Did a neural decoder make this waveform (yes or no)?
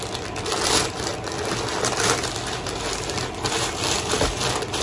no